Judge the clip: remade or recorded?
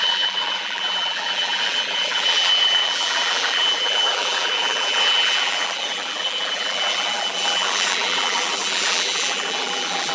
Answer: remade